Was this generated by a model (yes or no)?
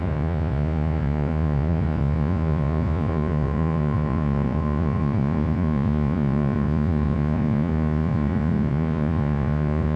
yes